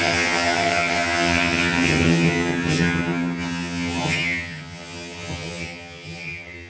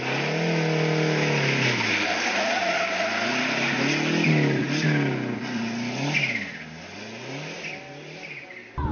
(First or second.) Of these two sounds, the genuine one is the second